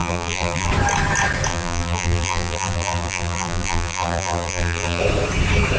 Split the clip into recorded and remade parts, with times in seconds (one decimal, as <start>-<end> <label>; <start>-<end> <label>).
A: 0.0-0.7 remade; 0.7-1.5 recorded; 1.5-5.0 remade; 5.0-5.8 recorded